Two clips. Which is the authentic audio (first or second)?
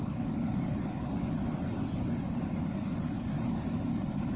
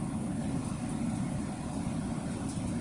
second